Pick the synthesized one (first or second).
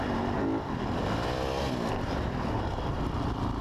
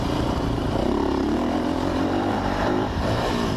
second